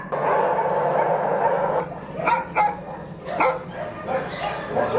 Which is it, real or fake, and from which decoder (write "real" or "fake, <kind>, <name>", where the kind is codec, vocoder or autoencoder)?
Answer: real